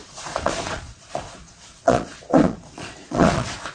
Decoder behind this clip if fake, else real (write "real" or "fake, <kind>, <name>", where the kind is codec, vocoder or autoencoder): fake, vocoder, Vocos